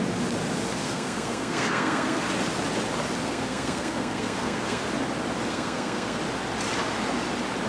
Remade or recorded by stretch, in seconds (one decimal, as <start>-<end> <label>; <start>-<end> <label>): 0.0-0.8 recorded; 0.8-2.2 remade; 2.2-3.2 recorded; 3.2-4.8 remade; 4.8-5.5 recorded; 5.5-6.2 remade; 6.2-7.7 recorded